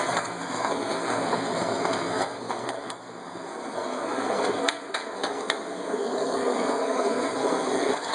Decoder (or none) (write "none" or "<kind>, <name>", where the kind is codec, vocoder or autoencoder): codec, SNAC